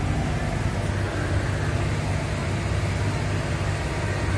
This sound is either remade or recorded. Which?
recorded